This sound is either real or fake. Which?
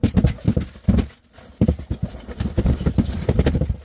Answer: real